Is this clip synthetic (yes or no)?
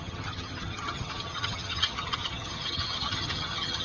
yes